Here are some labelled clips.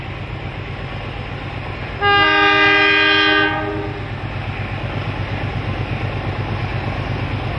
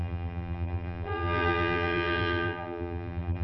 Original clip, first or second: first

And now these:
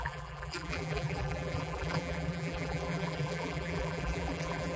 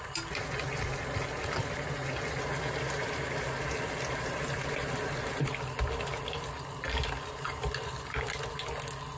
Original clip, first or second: second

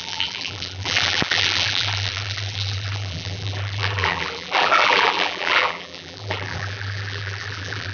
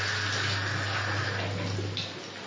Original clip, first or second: second